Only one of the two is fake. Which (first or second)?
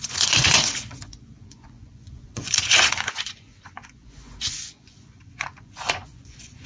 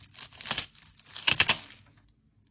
first